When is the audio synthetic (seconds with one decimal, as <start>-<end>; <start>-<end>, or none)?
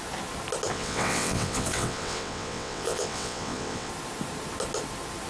0.7-3.9